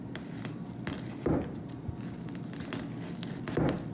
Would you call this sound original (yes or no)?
yes